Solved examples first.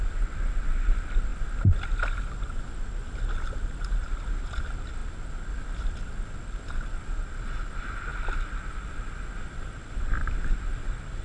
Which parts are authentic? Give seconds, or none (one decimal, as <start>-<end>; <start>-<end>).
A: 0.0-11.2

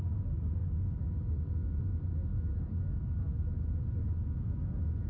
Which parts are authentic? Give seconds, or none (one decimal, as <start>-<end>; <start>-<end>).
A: 0.0-2.3; 2.8-3.3; 4.2-5.1

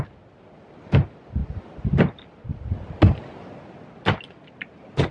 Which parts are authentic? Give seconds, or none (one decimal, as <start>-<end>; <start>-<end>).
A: 0.0-5.1